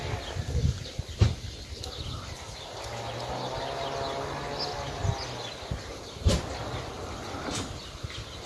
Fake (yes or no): no